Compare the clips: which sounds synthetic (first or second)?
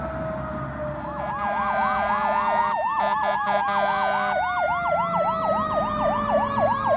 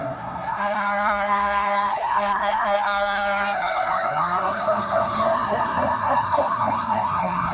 second